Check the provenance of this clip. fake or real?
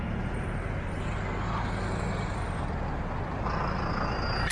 real